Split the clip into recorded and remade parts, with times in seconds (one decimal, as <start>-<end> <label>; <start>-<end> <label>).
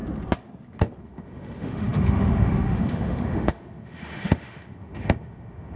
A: 0.0-1.0 recorded; 1.0-5.8 remade